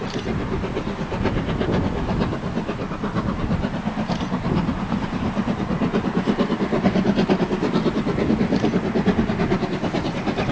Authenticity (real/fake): real